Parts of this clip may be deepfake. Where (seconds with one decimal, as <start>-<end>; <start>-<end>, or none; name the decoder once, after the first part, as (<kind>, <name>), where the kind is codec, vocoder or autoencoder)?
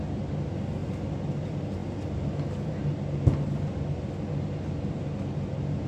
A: none